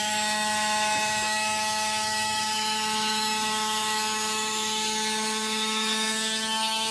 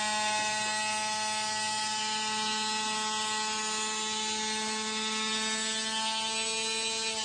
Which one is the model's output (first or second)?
first